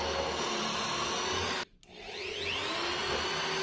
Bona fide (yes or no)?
yes